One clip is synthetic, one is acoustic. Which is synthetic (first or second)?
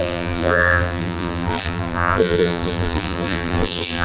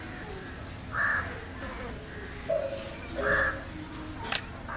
first